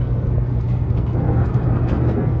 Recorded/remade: remade